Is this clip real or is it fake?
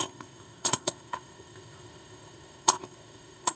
fake